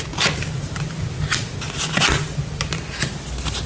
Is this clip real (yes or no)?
yes